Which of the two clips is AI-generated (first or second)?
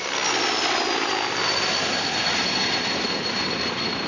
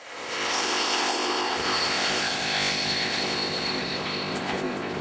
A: second